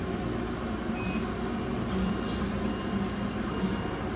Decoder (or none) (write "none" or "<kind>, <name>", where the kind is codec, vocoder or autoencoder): none